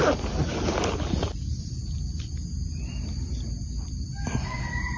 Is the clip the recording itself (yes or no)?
yes